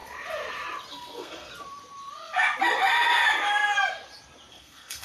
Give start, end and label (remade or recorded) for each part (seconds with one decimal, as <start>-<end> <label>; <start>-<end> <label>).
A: 0.0-0.9 recorded; 0.9-1.5 remade; 1.5-4.5 recorded; 4.5-5.0 remade

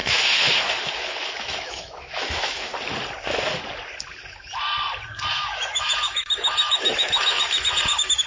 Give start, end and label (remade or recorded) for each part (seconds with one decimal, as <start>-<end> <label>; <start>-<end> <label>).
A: 0.0-2.7 remade; 2.7-5.3 recorded; 5.3-8.3 remade

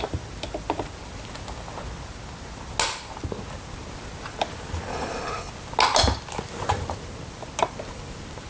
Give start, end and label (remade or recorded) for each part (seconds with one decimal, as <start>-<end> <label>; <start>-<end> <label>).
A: 0.0-4.9 recorded; 4.9-5.5 remade; 5.5-8.5 recorded

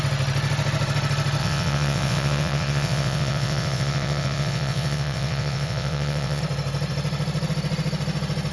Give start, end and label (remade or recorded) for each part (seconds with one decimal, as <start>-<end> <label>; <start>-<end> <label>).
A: 0.0-1.4 recorded; 1.4-6.4 remade; 6.4-8.5 recorded